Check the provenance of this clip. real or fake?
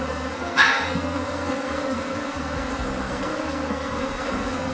fake